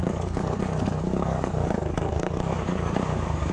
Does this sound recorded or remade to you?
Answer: remade